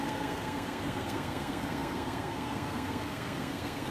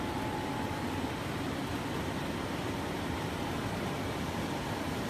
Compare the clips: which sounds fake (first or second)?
first